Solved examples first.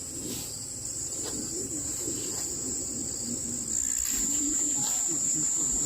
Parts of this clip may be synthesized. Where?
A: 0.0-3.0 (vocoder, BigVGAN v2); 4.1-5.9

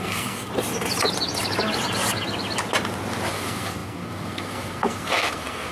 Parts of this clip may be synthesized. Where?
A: 0.0-0.5 (codec, SNAC); 3.3-5.7

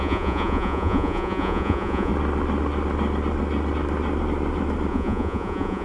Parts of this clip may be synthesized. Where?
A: 0.0-2.1 (vocoder, Vocos); 4.9-5.8

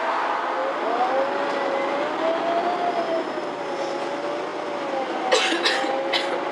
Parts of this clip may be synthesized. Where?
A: none

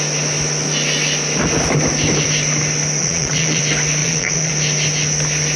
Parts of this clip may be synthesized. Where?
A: 3.0-3.6 (vocoder, Vocos); 4.0-4.5

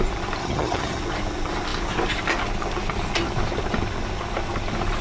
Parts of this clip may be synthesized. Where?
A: 0.4-1.0 (vocoder, HiFi-GAN)